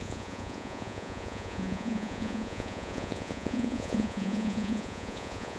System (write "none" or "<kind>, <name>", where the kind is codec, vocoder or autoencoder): vocoder, Vocos